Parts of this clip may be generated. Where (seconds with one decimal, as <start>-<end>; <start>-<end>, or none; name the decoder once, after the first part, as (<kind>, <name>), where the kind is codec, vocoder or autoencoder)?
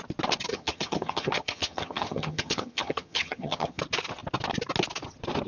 0.5-3.8 (vocoder, HiFi-GAN)